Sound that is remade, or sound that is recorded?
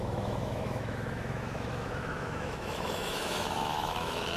remade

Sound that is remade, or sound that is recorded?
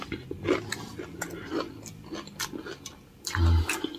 recorded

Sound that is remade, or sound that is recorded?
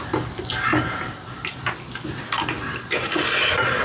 recorded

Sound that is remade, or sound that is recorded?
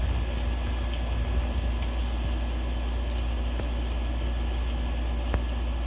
recorded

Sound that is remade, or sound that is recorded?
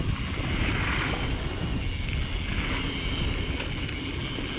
recorded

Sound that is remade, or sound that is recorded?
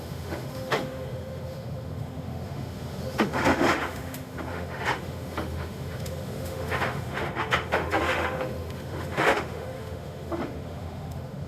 remade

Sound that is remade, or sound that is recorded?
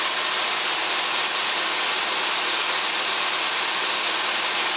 recorded